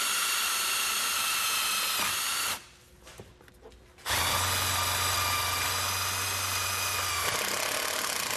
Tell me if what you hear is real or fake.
real